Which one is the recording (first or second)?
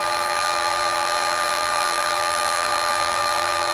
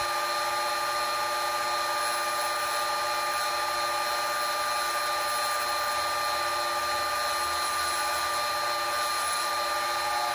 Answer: second